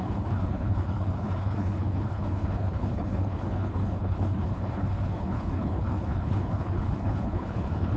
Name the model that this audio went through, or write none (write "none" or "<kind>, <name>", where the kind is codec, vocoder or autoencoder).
codec, HILCodec